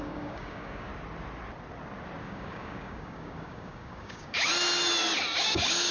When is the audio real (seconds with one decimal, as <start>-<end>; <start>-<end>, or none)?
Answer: 0.9-2.2; 4.5-5.4